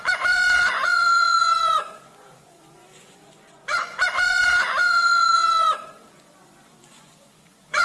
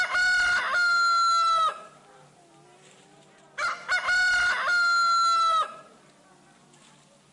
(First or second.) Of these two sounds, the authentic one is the second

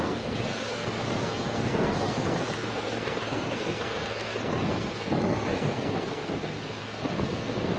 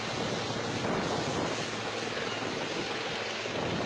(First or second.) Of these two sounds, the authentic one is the second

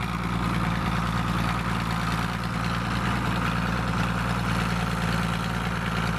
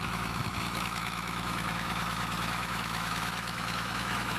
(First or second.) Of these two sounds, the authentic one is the first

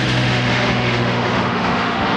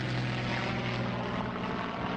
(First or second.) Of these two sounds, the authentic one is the second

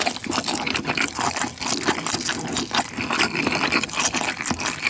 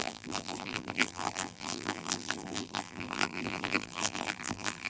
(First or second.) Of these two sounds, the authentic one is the first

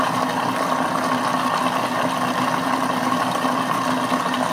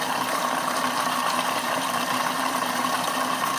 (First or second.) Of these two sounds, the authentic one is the first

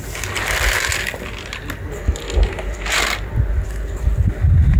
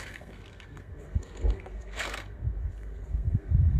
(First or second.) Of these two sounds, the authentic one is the first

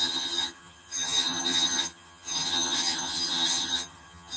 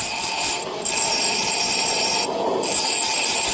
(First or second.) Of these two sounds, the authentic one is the second